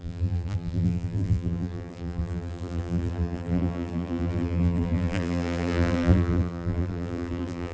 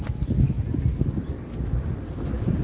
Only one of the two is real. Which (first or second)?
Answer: second